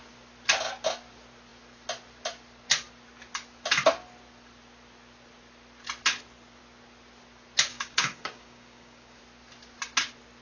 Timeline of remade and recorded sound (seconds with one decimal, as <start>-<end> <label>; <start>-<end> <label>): 0.0-7.7 recorded; 7.7-9.2 remade; 9.2-10.4 recorded